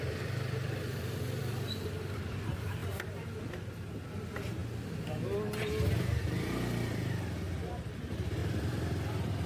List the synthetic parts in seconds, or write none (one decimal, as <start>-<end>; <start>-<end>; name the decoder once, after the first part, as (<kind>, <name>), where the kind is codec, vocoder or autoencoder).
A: 0.0-2.8 (vocoder, BigVGAN v2); 3.4-4.6; 7.5-9.5